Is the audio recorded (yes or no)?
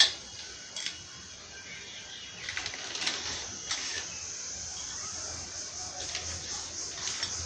yes